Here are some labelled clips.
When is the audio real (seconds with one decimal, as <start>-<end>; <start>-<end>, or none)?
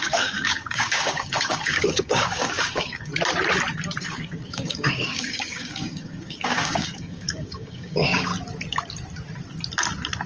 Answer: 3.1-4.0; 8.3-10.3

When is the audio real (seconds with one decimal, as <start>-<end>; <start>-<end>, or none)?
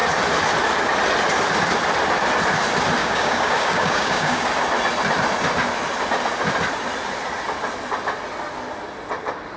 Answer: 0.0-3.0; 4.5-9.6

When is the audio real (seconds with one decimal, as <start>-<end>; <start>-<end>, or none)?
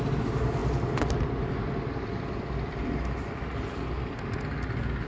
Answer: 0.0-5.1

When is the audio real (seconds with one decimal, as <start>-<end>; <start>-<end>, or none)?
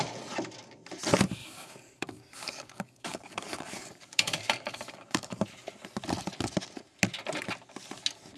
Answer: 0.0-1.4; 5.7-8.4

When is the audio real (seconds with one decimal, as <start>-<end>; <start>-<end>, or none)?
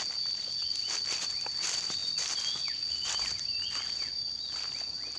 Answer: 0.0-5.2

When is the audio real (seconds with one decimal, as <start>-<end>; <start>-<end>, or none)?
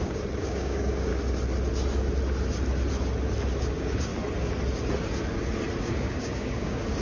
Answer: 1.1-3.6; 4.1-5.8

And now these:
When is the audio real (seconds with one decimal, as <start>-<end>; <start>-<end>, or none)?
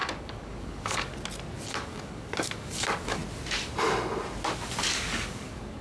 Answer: 1.1-1.7; 3.2-4.8